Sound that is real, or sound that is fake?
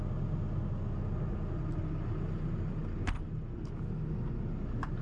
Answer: real